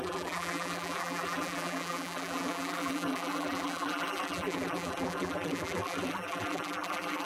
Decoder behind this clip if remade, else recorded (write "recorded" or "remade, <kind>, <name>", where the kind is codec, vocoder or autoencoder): remade, vocoder, BigVGAN v2